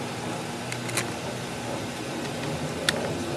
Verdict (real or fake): real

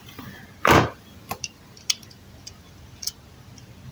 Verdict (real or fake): real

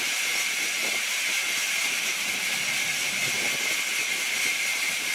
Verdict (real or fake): real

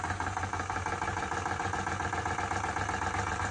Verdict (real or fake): real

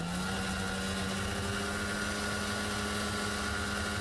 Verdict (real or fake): real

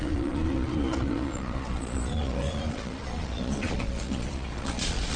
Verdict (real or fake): fake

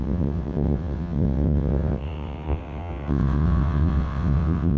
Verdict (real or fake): fake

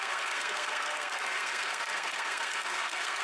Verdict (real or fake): fake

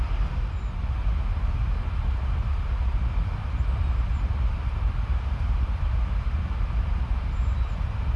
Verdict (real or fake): real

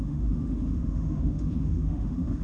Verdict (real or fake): fake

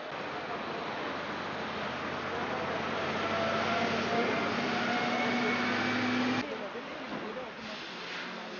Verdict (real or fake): real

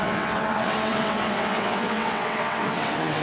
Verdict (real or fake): fake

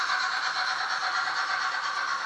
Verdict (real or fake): real